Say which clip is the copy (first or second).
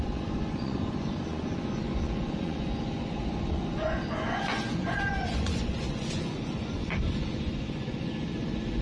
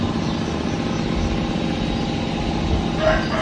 first